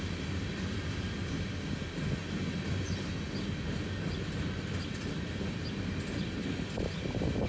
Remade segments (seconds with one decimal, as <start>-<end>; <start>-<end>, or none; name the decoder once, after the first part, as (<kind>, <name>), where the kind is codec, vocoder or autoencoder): none